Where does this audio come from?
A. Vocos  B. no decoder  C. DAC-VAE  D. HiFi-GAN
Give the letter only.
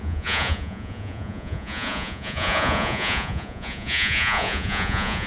A